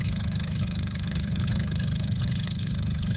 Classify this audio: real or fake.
fake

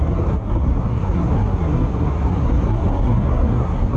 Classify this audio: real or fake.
fake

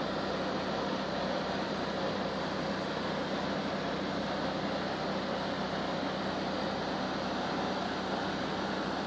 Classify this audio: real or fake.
real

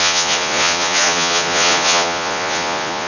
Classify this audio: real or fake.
fake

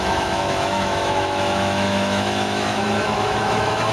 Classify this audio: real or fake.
fake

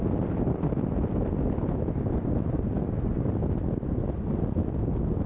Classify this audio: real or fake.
real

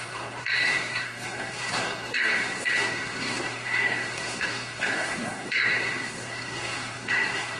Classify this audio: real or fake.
fake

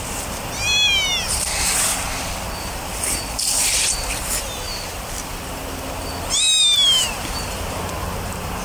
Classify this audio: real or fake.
real